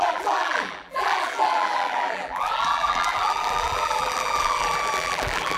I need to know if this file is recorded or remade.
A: remade